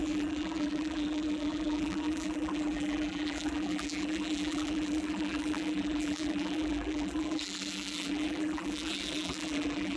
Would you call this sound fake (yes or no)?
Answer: yes